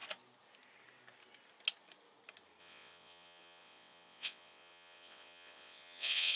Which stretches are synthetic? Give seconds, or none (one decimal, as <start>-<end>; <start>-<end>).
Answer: 2.6-6.4